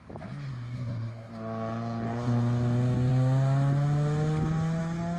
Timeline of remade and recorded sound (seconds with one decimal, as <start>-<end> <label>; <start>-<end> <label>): 0.0-0.5 recorded; 0.5-1.3 remade; 1.3-5.2 recorded